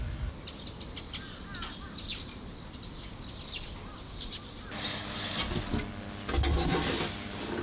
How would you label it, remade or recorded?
recorded